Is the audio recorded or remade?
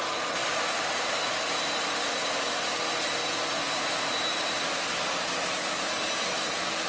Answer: recorded